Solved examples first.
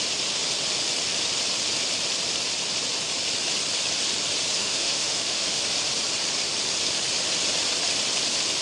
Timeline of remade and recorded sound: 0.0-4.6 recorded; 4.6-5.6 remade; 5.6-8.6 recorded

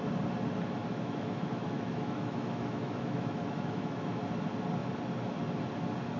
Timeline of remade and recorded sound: 0.0-0.8 recorded; 0.8-4.2 remade; 4.2-6.2 recorded

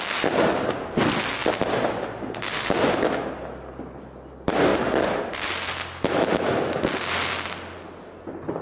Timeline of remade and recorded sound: 0.0-8.6 recorded

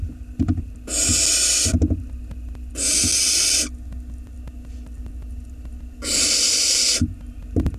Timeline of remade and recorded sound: 0.0-7.8 recorded

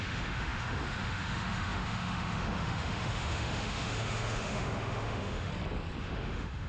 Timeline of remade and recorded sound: 0.0-5.5 remade; 5.5-6.0 recorded; 6.0-6.7 remade